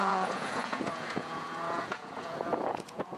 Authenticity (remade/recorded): remade